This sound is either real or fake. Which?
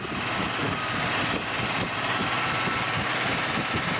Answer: real